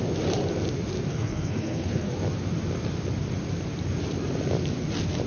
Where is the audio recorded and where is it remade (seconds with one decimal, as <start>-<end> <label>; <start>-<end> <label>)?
0.0-1.1 recorded; 1.1-2.1 remade; 2.1-5.3 recorded